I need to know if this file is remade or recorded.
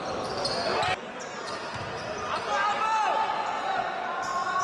recorded